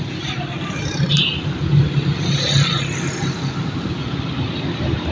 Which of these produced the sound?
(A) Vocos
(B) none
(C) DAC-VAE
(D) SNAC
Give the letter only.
B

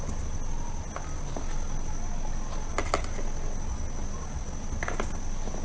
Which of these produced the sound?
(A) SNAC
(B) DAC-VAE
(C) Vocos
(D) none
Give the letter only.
D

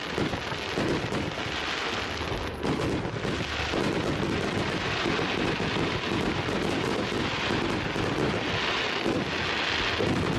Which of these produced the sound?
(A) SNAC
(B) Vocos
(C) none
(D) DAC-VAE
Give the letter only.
C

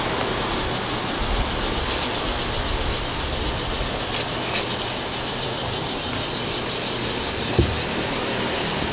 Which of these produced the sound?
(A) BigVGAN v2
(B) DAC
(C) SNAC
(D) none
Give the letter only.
D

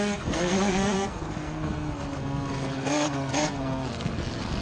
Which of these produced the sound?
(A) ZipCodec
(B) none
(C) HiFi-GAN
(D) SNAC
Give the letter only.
D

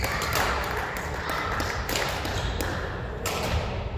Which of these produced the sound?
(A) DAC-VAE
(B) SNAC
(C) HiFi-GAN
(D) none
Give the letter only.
D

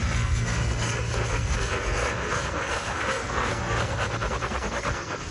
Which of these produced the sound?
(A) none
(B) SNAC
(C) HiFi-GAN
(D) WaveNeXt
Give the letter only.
B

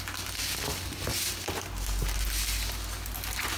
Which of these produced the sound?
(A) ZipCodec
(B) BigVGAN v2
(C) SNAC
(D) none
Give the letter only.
D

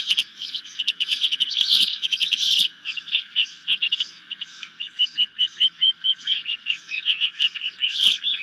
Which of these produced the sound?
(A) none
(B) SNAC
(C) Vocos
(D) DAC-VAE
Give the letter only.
B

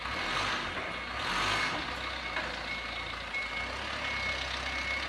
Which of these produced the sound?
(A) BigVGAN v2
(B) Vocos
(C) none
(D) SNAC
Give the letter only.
C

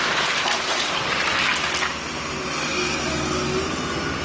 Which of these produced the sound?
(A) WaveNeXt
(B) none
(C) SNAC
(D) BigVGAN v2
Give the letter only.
B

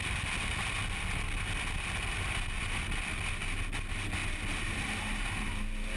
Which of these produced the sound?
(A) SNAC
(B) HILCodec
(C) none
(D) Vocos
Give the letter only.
C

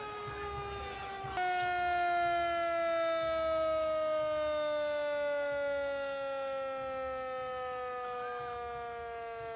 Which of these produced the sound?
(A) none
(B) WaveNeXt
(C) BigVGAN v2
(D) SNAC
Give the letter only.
A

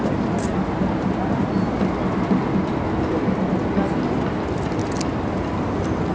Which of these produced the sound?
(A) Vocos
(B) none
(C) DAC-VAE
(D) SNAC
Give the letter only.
B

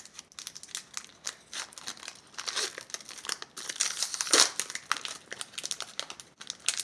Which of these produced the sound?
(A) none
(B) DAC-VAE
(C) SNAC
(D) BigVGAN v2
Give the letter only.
A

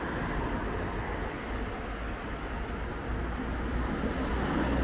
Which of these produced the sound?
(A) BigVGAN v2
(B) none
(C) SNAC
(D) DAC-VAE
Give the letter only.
B